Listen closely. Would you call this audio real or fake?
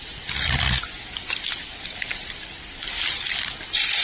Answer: real